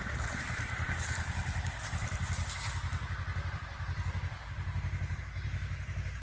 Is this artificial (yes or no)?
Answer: yes